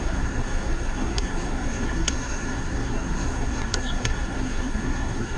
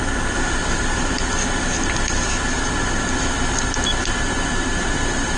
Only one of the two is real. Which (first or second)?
second